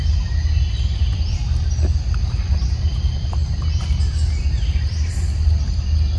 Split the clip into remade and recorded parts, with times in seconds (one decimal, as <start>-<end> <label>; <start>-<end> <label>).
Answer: 0.0-6.2 recorded